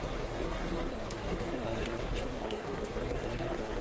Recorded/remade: remade